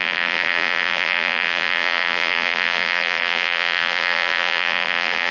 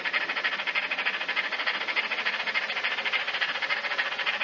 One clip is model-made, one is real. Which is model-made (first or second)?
first